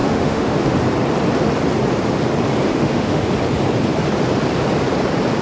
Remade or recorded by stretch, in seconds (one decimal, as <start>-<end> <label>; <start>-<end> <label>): 0.0-0.8 remade; 0.8-2.7 recorded; 2.7-3.3 remade; 3.3-5.4 recorded